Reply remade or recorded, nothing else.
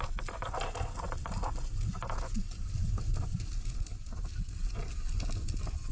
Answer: recorded